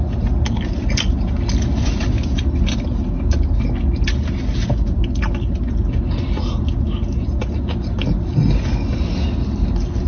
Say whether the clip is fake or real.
real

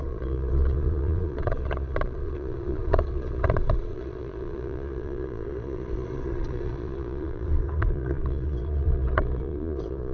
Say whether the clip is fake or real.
fake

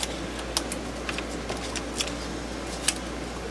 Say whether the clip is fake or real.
real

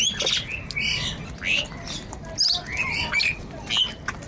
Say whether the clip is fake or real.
real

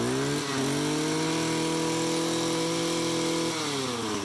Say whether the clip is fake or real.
real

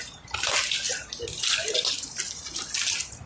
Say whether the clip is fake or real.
real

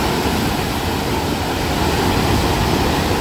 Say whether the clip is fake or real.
real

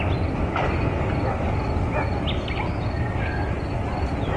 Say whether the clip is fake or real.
real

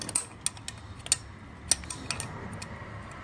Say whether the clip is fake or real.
real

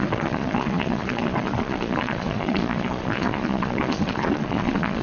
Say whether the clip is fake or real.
fake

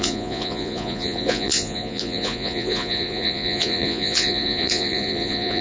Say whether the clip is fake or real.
fake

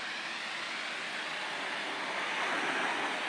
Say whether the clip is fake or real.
real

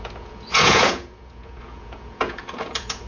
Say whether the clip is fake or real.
fake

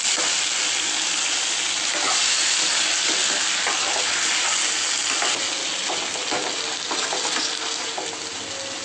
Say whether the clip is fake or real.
real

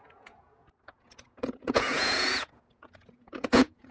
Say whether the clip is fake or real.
fake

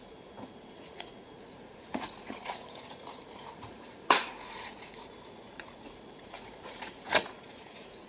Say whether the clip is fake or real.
fake